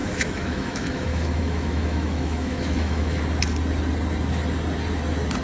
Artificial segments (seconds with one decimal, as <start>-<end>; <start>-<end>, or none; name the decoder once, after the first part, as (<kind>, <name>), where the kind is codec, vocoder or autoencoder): 0.0-3.2 (autoencoder, DAC-VAE)